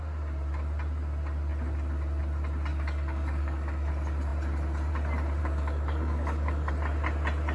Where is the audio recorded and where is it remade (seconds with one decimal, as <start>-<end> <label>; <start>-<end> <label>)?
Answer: 0.0-2.7 recorded; 2.7-3.9 remade; 3.9-5.4 recorded; 5.4-6.7 remade; 6.7-7.5 recorded